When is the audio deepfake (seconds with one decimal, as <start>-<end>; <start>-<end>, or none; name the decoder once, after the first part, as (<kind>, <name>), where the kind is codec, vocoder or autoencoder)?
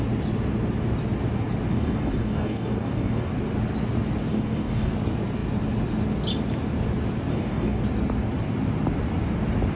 1.7-3.3 (codec, DAC); 4.3-4.9; 7.3-7.8